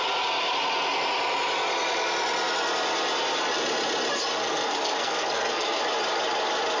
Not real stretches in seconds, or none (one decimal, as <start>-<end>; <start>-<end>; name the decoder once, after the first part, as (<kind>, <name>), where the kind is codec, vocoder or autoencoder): 4.4-5.8 (codec, SNAC)

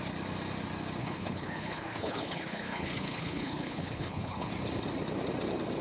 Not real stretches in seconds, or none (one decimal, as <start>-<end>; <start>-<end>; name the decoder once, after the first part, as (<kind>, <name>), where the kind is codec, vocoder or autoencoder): 1.0-4.5 (codec, HILCodec)

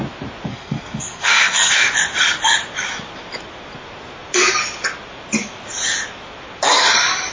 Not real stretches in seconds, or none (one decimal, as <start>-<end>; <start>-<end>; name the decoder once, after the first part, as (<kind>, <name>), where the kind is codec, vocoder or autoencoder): 0.5-1.7 (codec, SNAC)

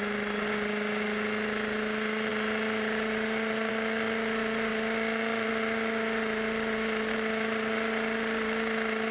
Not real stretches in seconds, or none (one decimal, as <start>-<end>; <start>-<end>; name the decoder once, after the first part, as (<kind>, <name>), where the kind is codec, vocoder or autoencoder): none

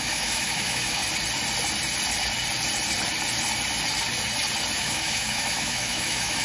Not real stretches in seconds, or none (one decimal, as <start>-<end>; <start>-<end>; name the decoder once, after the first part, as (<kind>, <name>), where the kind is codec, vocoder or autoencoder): 0.0-1.0 (autoencoder, DAC-VAE); 4.8-6.4

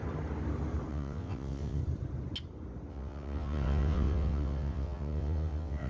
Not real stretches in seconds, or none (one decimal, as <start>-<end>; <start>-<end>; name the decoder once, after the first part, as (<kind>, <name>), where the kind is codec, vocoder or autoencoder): 0.9-1.8 (vocoder, WaveNeXt); 2.9-5.9